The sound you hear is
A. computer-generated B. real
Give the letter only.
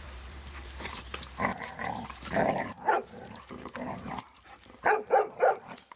A